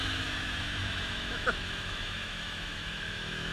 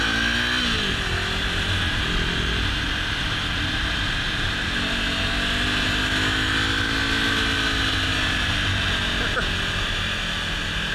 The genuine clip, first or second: second